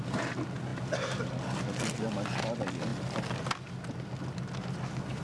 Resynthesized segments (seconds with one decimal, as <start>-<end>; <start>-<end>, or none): none